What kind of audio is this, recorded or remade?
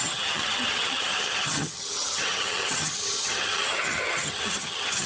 remade